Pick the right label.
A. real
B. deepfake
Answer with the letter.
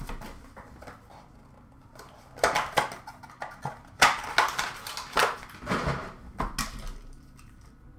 A